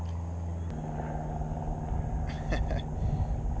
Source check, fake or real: real